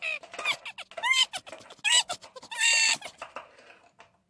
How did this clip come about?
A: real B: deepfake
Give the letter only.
A